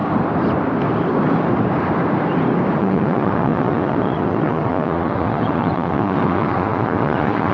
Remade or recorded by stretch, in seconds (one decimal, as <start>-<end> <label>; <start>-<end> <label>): 0.0-2.8 recorded; 2.8-7.5 remade